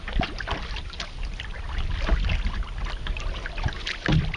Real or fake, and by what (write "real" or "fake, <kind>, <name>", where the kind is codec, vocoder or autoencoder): real